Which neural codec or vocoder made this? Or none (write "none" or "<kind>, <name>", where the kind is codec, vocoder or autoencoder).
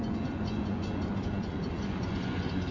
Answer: vocoder, Vocos